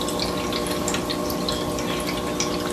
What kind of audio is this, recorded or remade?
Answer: recorded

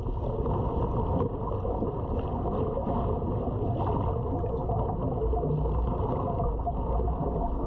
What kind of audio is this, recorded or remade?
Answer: recorded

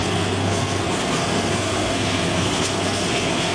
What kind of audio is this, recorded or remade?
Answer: remade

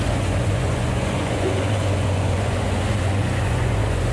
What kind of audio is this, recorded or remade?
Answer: remade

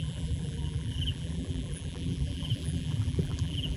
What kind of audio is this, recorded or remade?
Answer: remade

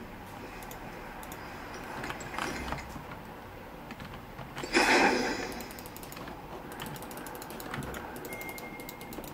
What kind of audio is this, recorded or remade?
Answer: recorded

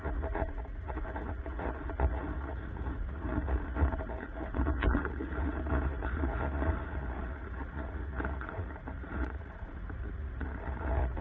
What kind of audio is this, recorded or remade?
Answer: remade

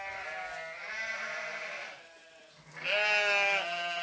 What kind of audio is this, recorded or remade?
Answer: recorded